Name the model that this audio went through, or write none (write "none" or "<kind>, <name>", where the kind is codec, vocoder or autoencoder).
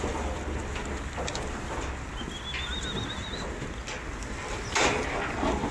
none